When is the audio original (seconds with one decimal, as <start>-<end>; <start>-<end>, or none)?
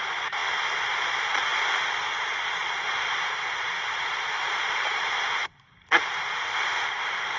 0.4-1.0; 1.5-2.1